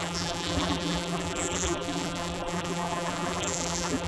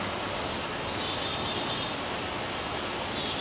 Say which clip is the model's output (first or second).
first